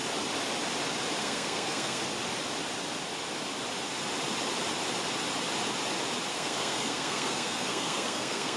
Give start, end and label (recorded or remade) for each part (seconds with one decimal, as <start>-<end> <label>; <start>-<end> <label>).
0.0-1.2 recorded; 1.2-2.0 remade; 2.0-6.3 recorded; 6.3-8.6 remade